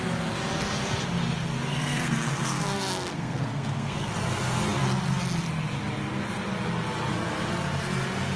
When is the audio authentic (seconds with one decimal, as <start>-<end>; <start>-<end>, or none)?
0.0-1.7; 4.1-8.4